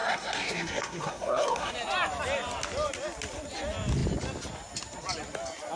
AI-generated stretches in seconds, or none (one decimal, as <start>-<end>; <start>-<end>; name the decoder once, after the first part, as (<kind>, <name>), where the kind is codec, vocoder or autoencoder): 0.0-1.7 (codec, SNAC)